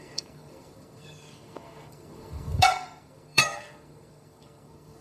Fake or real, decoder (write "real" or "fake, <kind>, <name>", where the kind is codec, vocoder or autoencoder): fake, codec, SNAC